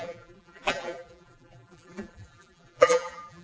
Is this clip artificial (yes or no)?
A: yes